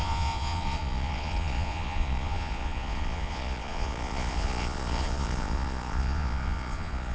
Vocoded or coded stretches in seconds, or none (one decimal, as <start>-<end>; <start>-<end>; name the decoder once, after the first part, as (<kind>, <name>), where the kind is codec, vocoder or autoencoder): 0.0-7.1 (vocoder, Vocos)